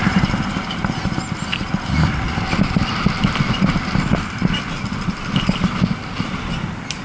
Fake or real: real